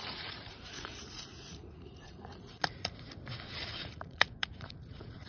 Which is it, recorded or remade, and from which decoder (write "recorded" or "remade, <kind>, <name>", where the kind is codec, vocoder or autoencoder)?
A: remade, vocoder, Vocos